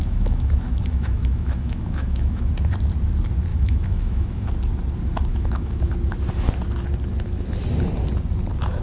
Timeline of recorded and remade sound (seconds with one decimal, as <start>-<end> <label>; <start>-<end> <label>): 0.0-2.5 remade; 2.5-3.5 recorded; 3.5-4.5 remade; 4.5-5.3 recorded; 5.3-5.9 remade; 5.9-8.8 recorded